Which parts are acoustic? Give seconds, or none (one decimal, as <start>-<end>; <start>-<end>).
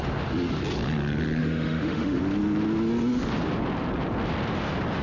0.0-1.4; 2.2-5.0